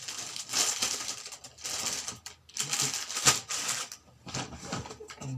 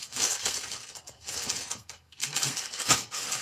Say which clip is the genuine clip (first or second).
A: first